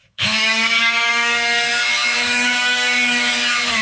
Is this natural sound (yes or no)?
no